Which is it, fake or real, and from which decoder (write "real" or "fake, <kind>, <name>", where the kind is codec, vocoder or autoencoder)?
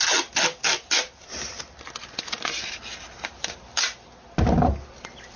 real